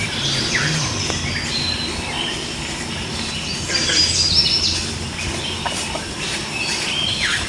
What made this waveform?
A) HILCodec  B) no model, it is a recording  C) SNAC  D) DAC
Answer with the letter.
B